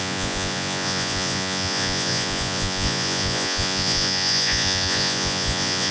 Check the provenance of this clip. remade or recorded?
remade